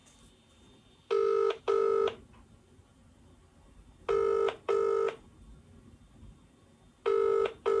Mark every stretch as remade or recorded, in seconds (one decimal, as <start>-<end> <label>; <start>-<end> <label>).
0.0-7.8 recorded